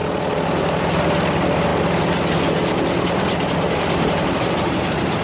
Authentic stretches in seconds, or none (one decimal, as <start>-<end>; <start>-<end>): 0.0-5.2